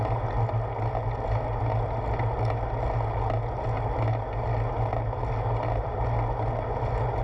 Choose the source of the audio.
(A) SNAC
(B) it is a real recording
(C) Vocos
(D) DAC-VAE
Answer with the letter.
B